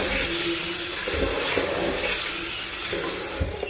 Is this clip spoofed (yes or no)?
no